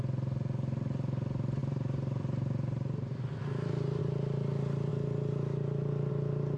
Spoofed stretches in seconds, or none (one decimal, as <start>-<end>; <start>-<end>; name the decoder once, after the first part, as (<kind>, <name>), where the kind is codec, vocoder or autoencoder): 1.6-4.0 (vocoder, BigVGAN v2)